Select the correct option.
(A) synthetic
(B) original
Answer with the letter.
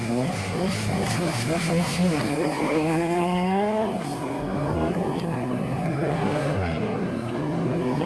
A